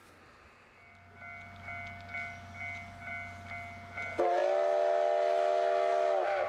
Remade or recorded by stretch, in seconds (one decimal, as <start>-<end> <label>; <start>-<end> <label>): 0.0-6.5 recorded